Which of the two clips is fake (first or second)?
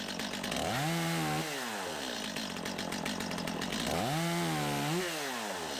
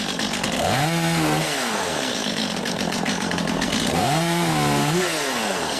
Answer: second